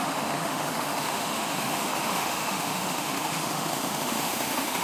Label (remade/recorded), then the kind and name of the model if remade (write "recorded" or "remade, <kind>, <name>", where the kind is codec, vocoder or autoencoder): remade, autoencoder, DAC-VAE